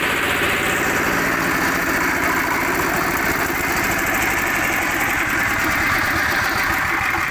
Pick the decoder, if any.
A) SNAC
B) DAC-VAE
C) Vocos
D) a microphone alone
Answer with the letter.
D